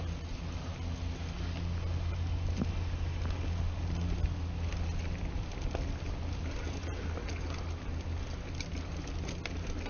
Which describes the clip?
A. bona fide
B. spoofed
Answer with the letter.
A